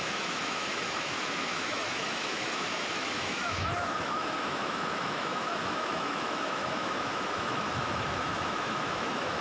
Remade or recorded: remade